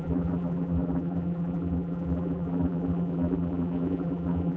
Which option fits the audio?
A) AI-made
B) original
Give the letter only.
A